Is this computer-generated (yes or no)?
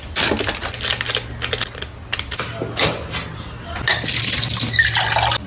no